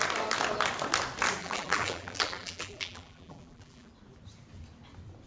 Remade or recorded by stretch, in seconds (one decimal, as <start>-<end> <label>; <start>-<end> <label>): 0.0-1.4 recorded; 1.4-3.9 remade; 3.9-5.3 recorded